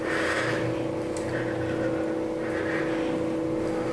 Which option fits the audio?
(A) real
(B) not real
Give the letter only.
A